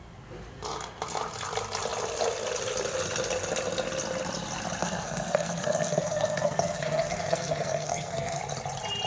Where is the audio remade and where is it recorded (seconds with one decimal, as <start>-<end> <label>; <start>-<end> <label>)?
0.0-4.8 recorded; 4.8-8.4 remade; 8.4-9.1 recorded